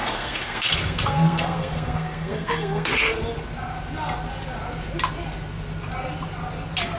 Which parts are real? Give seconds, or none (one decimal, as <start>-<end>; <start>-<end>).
3.2-7.0